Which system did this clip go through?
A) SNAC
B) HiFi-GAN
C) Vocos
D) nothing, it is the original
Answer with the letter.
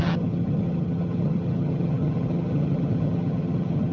B